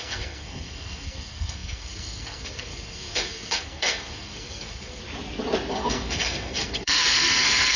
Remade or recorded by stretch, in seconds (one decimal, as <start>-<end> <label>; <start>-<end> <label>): 0.0-5.0 remade; 5.0-5.7 recorded; 5.7-7.8 remade

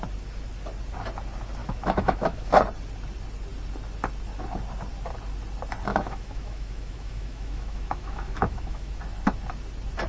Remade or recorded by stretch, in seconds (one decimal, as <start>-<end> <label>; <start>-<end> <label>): 0.0-1.6 recorded; 1.6-2.5 remade; 2.5-5.9 recorded; 5.9-9.0 remade; 9.0-10.1 recorded

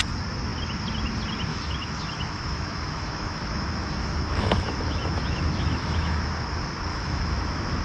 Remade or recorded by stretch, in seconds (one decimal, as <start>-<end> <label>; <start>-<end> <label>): 0.0-1.5 recorded; 1.5-6.2 remade; 6.2-6.9 recorded; 6.9-7.8 remade

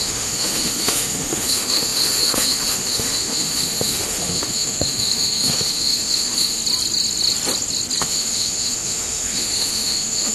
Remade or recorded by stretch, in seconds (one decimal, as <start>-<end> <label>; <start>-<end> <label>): 0.0-6.6 remade; 6.6-8.0 recorded; 8.0-10.3 remade

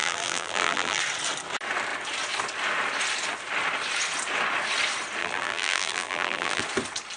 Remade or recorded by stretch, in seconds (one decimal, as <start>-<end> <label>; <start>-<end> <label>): 0.0-1.0 remade; 1.0-5.2 recorded; 5.2-6.6 remade; 6.6-7.2 recorded